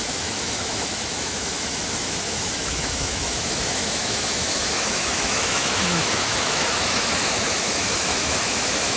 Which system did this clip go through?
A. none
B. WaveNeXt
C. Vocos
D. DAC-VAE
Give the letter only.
D